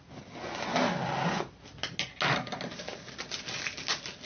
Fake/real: real